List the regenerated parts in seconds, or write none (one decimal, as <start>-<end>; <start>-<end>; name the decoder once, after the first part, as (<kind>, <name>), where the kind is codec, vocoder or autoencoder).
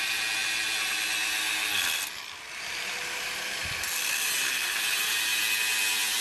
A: none